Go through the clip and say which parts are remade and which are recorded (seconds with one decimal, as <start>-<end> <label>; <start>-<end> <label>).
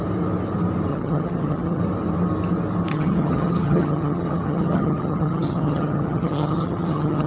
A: 0.0-0.9 recorded; 0.9-1.8 remade; 1.8-2.9 recorded; 2.9-7.3 remade